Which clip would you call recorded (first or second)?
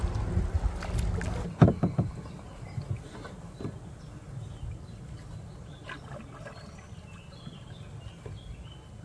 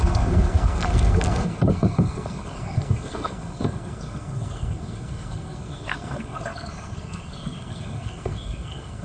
first